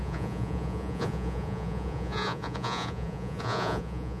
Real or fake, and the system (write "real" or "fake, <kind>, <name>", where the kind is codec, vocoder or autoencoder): fake, vocoder, Vocos